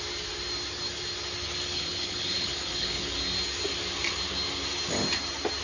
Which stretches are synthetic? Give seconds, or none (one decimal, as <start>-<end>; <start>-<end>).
1.7-3.1